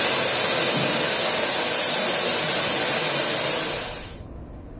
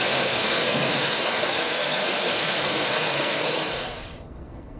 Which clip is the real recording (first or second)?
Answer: first